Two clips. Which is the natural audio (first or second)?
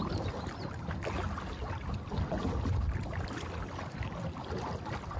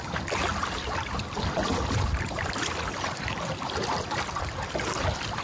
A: first